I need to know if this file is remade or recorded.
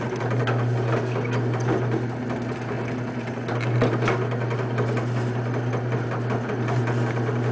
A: recorded